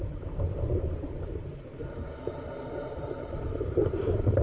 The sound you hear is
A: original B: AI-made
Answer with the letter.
B